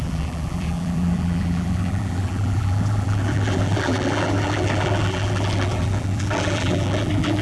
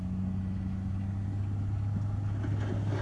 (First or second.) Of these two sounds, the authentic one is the second